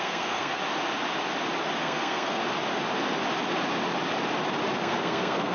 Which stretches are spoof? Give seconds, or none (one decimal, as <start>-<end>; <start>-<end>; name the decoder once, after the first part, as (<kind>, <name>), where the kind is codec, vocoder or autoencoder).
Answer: 0.0-0.6 (codec, SNAC); 1.8-2.4; 4.8-5.5